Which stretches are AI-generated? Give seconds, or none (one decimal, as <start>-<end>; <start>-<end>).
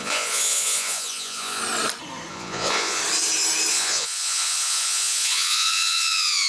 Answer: 0.0-1.6; 2.3-3.0; 3.7-6.5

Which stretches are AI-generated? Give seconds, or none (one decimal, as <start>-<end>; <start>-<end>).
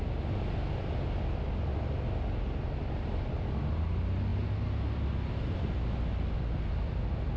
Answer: none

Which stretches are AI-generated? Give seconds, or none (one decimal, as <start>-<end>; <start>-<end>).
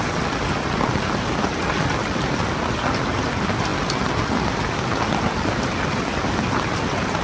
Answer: none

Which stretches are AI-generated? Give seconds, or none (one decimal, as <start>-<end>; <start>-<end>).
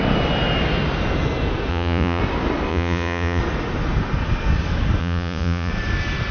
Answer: 1.7-2.2; 2.7-3.4; 5.0-5.7